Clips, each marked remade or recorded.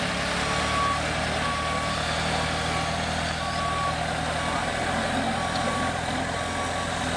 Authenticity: recorded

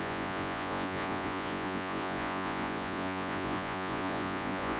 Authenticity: remade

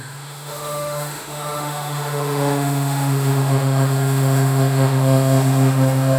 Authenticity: remade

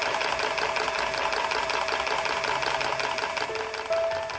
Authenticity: recorded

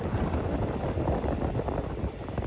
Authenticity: recorded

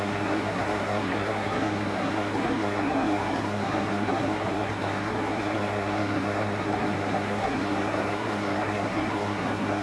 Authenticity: remade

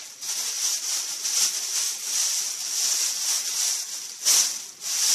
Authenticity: recorded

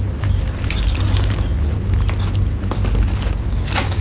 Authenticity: recorded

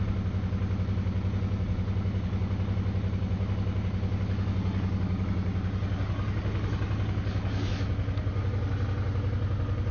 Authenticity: recorded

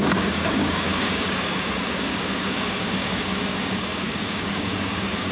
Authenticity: remade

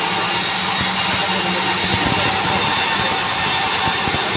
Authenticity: recorded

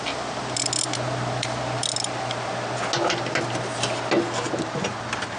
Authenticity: recorded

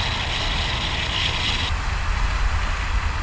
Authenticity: recorded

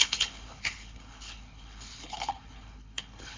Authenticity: remade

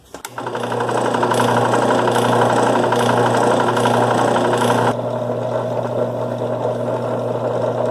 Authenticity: recorded